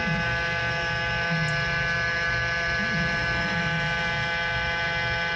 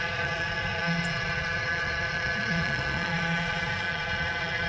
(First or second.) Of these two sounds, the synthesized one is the second